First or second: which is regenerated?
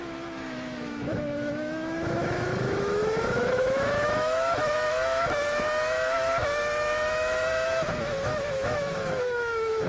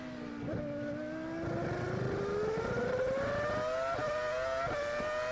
first